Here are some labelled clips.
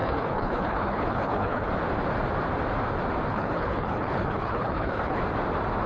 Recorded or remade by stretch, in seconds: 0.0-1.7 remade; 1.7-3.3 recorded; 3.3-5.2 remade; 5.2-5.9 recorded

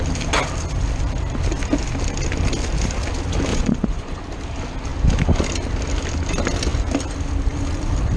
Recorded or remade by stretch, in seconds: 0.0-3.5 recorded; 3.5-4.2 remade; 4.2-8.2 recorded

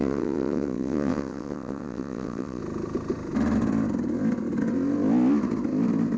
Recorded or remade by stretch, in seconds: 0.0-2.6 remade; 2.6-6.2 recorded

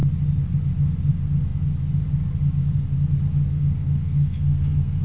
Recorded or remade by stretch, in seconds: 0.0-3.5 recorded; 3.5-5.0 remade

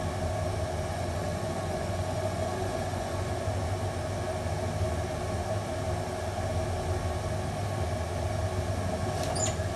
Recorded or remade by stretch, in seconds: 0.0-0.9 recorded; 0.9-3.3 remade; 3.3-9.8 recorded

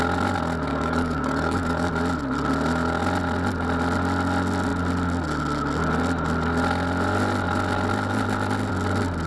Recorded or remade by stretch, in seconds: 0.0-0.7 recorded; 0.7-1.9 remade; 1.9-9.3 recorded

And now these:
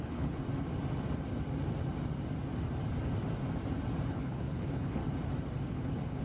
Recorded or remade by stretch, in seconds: 0.0-0.4 remade; 0.4-4.1 recorded; 4.1-5.0 remade; 5.0-5.7 recorded; 5.7-6.2 remade

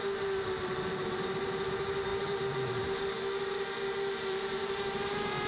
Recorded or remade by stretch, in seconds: 0.0-5.5 remade